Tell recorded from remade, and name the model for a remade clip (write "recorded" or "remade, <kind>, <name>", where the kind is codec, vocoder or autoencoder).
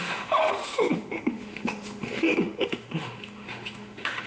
remade, autoencoder, DAC-VAE